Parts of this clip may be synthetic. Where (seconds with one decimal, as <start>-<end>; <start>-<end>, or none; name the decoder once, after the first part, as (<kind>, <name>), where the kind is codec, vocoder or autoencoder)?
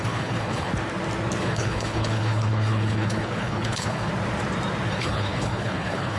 0.0-0.7 (codec, HILCodec); 1.4-4.1; 4.9-6.2